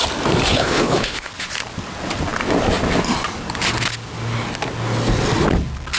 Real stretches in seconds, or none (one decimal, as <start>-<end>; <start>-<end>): 0.0-0.5; 1.3-6.0